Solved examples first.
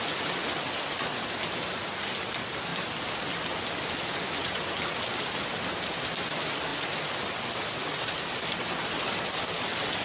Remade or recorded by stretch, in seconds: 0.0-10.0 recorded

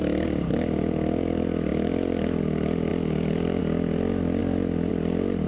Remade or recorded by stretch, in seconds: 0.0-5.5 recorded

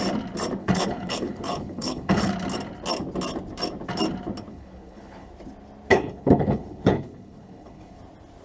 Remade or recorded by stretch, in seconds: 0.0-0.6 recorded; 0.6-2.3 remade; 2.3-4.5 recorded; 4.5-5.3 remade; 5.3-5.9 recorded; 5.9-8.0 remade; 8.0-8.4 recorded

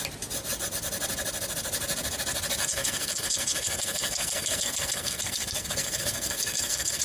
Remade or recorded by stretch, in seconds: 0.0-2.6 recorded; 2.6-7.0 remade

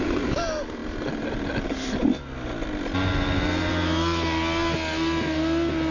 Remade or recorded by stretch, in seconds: 0.0-5.9 recorded